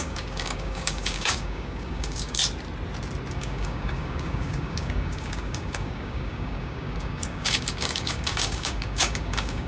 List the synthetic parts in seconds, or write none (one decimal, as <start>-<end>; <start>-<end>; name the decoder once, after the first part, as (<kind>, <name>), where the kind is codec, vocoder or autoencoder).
0.0-2.4 (codec, DAC); 3.3-9.7